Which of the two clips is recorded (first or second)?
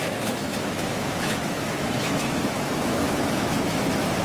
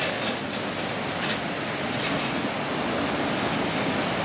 second